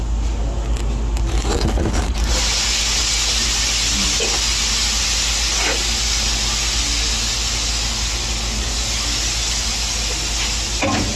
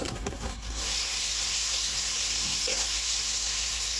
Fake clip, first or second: second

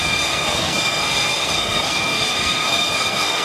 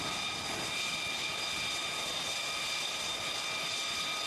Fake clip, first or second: first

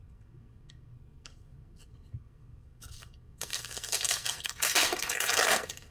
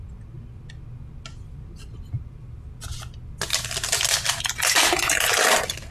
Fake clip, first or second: first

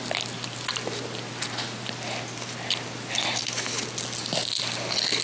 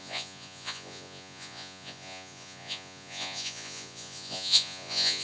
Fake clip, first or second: second